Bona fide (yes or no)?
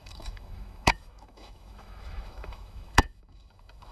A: no